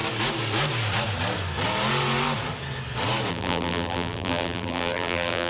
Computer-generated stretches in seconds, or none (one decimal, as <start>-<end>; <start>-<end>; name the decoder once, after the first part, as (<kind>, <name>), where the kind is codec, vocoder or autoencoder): 3.3-5.5 (vocoder, BigVGAN v2)